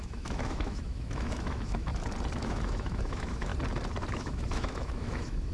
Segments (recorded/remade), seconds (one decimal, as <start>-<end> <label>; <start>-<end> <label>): 0.0-1.9 remade; 1.9-2.4 recorded; 2.4-3.5 remade; 3.5-4.1 recorded; 4.1-5.5 remade